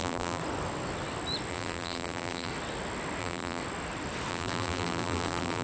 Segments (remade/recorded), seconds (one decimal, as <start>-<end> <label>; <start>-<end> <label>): 0.0-0.4 remade; 0.4-1.5 recorded; 1.5-2.5 remade; 2.5-3.2 recorded; 3.2-3.6 remade; 3.6-4.3 recorded; 4.3-5.6 remade